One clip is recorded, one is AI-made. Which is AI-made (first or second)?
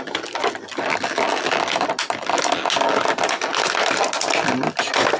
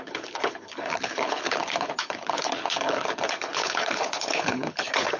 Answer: second